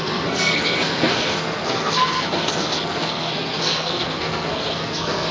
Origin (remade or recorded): remade